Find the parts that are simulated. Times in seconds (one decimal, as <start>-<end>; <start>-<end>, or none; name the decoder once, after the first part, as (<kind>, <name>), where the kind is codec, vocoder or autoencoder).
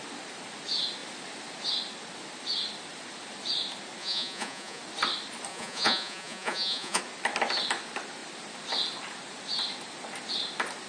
4.0-4.8 (vocoder, Vocos); 5.5-7.0